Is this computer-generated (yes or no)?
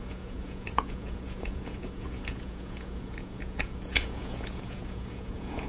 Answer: yes